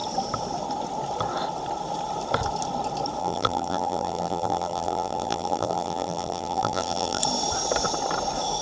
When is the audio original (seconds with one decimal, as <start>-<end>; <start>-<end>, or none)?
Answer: 0.0-3.2; 7.2-8.6